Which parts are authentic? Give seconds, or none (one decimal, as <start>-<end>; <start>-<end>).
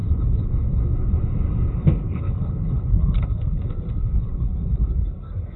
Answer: 0.8-2.1; 3.6-4.0; 4.9-5.6